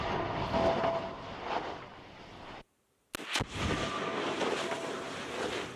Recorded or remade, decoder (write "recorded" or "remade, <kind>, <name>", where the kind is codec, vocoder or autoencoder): recorded